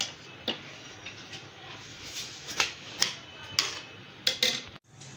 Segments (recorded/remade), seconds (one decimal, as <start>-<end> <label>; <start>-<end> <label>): 0.0-1.9 recorded; 1.9-2.9 remade; 2.9-5.2 recorded